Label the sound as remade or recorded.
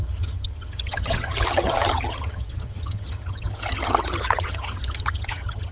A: remade